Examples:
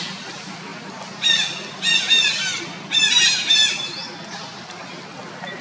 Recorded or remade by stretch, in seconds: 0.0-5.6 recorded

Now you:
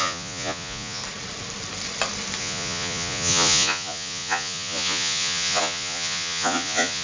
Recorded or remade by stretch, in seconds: 0.0-1.0 remade; 1.0-2.4 recorded; 2.4-7.0 remade